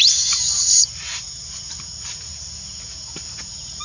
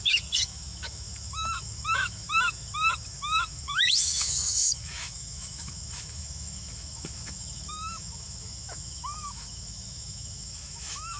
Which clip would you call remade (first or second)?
second